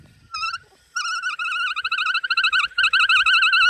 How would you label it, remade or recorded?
recorded